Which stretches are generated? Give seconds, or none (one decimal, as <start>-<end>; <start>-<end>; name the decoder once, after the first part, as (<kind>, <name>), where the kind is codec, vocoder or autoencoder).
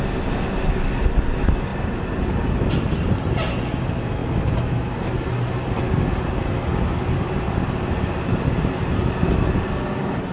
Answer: none